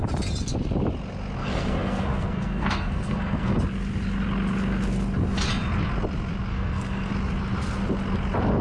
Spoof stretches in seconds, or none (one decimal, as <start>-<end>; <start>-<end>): 1.4-3.6; 6.5-7.1